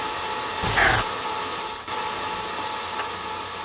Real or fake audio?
real